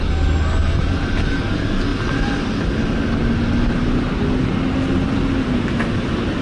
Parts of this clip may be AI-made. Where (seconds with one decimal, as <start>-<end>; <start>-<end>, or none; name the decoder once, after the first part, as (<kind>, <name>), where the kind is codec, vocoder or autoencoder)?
none